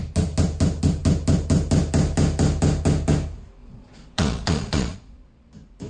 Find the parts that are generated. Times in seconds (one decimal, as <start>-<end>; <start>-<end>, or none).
3.6-5.5